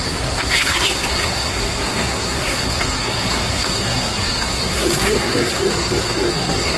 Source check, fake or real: fake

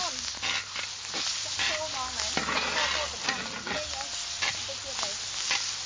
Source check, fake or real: real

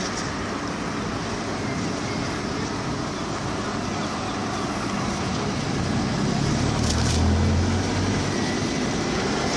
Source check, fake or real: real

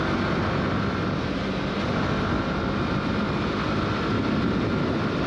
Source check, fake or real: real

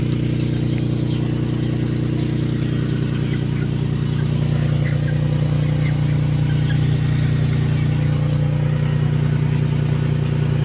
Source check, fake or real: real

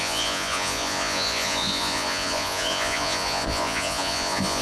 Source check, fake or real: fake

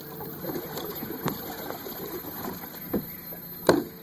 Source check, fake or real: fake